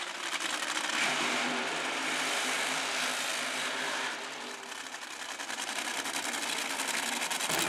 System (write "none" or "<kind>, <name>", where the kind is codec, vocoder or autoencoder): vocoder, BigVGAN v2